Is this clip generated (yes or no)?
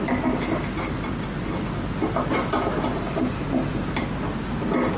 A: no